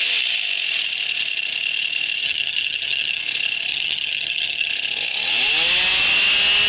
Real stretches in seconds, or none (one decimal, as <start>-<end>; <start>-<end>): 0.0-2.2; 3.2-3.7; 4.7-6.7